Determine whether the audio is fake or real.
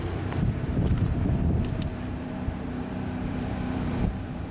fake